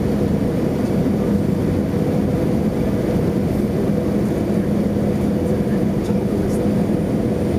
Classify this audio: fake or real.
real